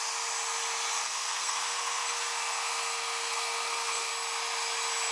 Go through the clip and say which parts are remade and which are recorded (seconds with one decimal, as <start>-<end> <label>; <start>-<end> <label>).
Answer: 0.0-1.0 recorded; 1.0-4.1 remade; 4.1-5.1 recorded